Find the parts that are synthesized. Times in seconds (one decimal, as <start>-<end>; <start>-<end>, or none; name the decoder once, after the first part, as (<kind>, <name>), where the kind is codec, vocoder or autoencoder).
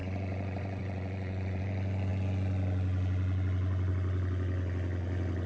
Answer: 0.0-1.6 (vocoder, Vocos)